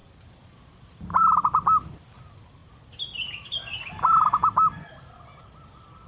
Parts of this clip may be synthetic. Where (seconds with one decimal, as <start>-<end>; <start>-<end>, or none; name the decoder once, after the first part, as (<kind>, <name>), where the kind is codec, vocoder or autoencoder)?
none

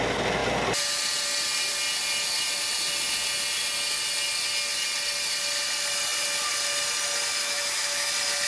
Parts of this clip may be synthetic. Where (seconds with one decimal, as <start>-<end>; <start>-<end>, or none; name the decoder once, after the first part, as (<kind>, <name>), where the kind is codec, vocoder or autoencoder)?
7.4-8.1 (autoencoder, DAC-VAE)